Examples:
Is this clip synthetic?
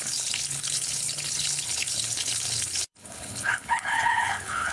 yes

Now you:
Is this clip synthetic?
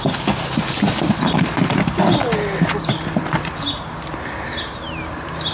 no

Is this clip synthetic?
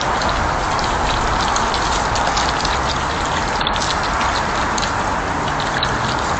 no